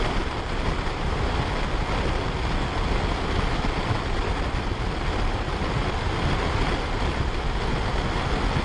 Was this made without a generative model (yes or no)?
yes